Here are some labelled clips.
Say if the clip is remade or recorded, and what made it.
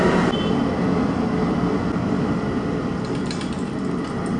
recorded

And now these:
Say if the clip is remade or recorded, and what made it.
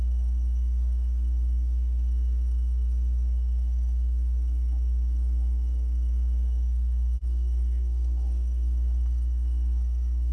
remade, codec, SNAC